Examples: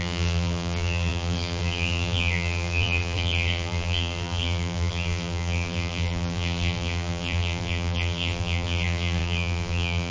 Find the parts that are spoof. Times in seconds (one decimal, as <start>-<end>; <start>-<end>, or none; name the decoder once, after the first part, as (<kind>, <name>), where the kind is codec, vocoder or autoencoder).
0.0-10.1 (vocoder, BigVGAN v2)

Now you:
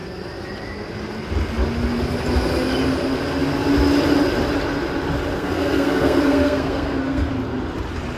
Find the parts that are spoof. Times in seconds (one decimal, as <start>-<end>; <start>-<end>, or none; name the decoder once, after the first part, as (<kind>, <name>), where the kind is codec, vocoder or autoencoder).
5.3-7.3 (codec, SNAC)

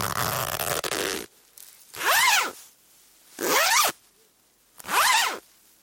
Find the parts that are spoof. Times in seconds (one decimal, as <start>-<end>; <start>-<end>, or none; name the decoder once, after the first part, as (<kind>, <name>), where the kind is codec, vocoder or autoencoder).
none

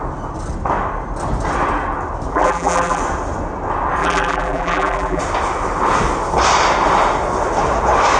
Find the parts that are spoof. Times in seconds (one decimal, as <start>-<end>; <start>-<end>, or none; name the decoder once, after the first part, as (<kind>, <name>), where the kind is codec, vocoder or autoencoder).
2.3-3.0 (vocoder, BigVGAN v2); 4.0-5.2

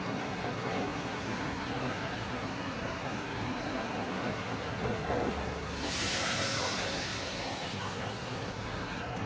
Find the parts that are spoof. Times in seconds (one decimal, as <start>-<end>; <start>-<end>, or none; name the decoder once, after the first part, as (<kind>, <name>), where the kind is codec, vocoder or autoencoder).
0.0-9.3 (codec, SNAC)

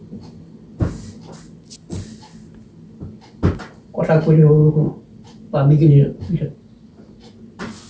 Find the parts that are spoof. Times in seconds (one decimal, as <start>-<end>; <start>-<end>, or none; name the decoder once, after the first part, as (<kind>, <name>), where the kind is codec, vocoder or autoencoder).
none

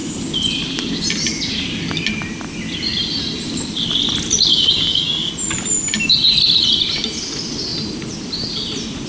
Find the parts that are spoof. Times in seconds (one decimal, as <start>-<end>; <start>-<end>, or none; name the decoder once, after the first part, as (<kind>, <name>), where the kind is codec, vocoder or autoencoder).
4.5-5.3 (codec, DAC)